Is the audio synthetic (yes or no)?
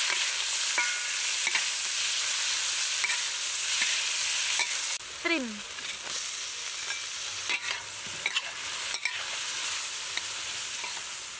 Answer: no